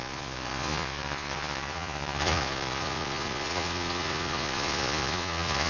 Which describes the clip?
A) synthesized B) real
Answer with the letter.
A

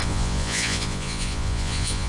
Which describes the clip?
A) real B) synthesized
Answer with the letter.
B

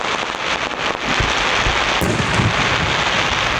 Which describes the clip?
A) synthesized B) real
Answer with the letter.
B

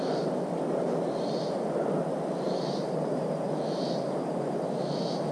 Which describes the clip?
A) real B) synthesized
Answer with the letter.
A